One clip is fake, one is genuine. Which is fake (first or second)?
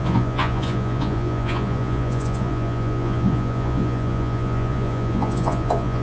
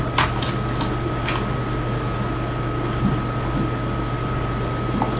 first